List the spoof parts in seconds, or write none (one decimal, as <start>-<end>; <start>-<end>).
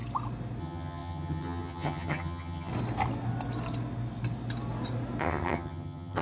0.6-2.7; 5.2-6.2